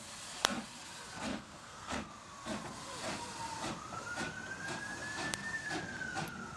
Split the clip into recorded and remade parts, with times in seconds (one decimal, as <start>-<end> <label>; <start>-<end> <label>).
0.0-1.3 recorded; 1.3-2.1 remade; 2.1-6.6 recorded